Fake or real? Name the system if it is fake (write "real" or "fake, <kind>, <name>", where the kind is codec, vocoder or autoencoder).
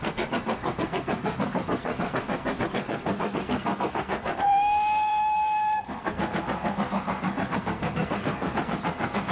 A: fake, codec, SNAC